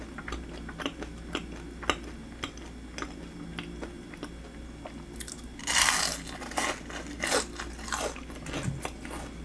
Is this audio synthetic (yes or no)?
no